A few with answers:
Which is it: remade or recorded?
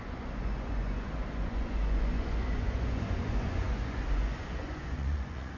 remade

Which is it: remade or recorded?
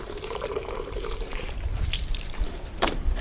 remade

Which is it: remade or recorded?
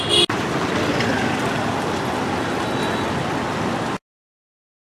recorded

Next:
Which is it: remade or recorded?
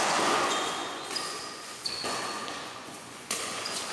remade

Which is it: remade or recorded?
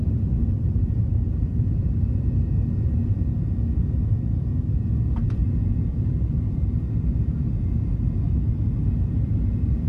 remade